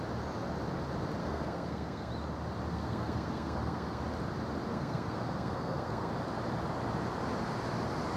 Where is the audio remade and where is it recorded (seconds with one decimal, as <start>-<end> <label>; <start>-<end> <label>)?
0.0-1.2 recorded; 1.2-2.1 remade; 2.1-2.7 recorded; 2.7-4.0 remade; 4.0-4.7 recorded; 4.7-6.1 remade; 6.1-8.2 recorded